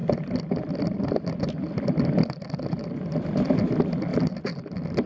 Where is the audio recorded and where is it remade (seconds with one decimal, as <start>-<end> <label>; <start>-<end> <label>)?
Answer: 0.0-3.1 remade; 3.1-4.1 recorded; 4.1-4.6 remade; 4.6-5.1 recorded